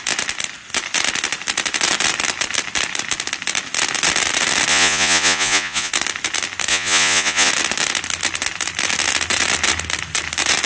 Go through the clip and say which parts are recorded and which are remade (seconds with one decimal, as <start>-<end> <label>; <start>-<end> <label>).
0.0-4.7 recorded; 4.7-5.9 remade; 5.9-6.7 recorded; 6.7-7.5 remade; 7.5-10.7 recorded